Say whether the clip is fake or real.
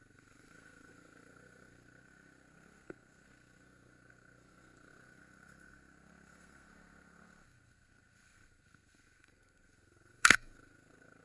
fake